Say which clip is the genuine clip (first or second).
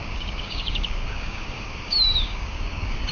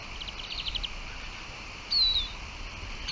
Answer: second